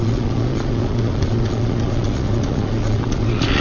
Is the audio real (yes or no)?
no